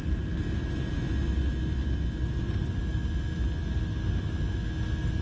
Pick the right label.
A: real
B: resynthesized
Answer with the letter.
A